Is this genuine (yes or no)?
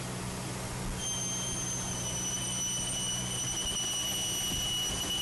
yes